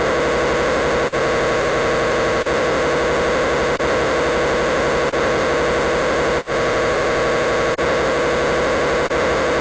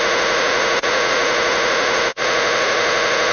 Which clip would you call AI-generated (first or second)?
second